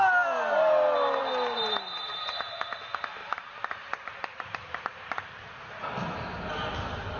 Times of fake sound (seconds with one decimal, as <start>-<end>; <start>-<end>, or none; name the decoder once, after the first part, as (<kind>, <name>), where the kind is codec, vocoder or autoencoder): 1.2-2.8 (vocoder, BigVGAN v2); 3.2-5.8